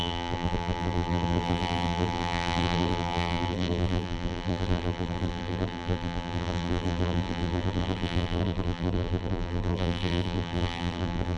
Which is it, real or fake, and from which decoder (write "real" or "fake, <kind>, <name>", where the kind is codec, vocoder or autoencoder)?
fake, vocoder, BigVGAN v2